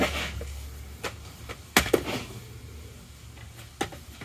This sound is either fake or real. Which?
real